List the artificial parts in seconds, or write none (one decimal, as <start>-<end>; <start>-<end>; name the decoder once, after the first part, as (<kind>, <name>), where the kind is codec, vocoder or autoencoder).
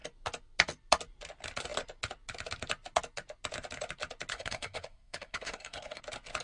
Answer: 4.3-6.0 (codec, SNAC)